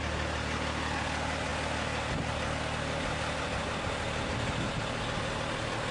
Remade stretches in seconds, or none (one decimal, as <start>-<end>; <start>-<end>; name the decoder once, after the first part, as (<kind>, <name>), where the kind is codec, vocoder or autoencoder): none